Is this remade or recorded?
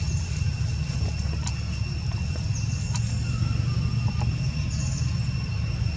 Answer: recorded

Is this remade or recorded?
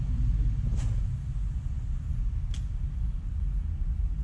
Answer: recorded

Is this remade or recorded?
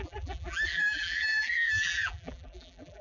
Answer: remade